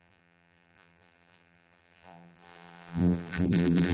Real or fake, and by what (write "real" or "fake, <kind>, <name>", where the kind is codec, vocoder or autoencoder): fake, vocoder, BigVGAN v2